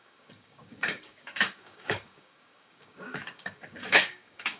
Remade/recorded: remade